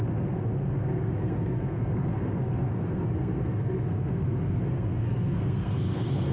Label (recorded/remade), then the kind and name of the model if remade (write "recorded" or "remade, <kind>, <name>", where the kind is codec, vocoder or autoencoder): remade, codec, SNAC